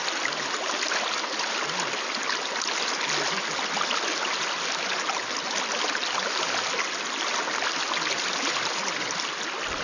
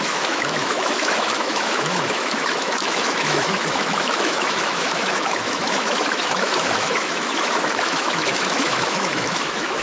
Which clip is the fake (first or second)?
second